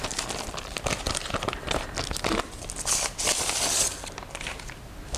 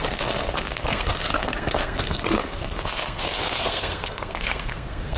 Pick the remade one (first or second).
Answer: second